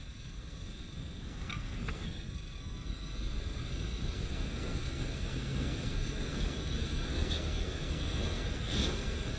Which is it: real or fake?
fake